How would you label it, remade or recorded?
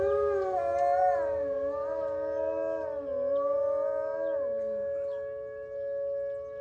recorded